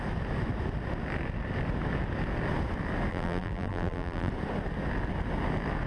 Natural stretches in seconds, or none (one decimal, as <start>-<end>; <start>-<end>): 0.0-3.1; 4.3-5.9